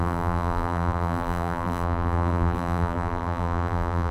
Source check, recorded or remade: remade